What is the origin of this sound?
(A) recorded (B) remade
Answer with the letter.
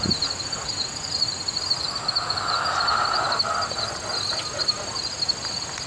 A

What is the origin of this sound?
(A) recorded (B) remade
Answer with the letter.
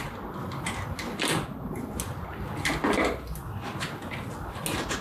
A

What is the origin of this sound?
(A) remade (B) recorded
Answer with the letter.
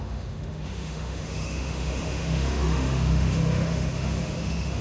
A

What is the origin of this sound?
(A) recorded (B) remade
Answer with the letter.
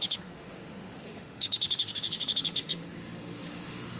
B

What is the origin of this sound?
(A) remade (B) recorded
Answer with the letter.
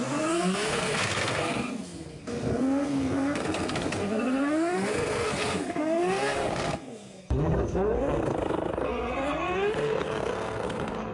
A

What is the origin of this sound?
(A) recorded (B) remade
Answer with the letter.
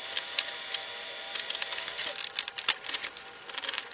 A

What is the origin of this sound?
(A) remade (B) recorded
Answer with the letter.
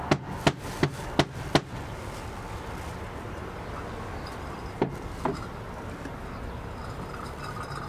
B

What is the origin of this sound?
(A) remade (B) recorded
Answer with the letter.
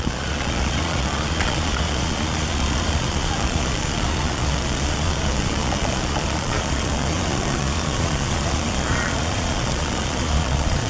A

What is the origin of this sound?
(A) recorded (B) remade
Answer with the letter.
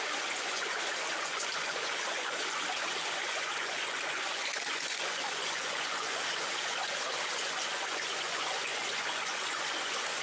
B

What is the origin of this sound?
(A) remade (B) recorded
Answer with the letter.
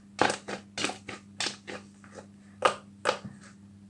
B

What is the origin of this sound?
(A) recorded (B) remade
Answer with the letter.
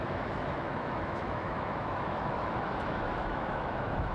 B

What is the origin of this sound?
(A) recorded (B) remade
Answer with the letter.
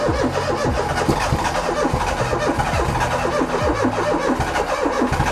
A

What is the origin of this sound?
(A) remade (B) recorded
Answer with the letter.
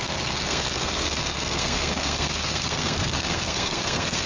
A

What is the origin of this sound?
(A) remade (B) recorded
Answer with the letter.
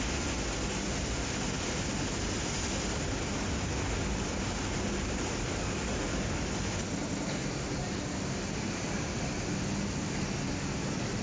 B